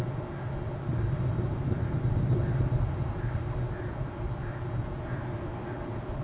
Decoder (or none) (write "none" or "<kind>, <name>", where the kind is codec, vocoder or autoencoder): none